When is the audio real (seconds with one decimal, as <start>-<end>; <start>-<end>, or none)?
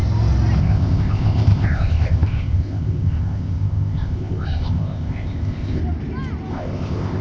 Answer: 0.0-0.6; 5.8-6.5